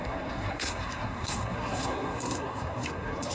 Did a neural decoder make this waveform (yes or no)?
yes